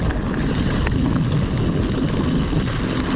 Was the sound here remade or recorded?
recorded